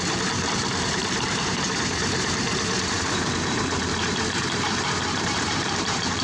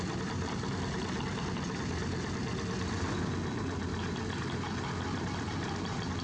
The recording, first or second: second